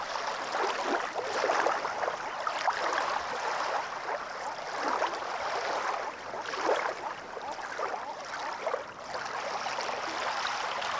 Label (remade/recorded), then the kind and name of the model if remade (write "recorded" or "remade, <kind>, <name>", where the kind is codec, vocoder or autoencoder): recorded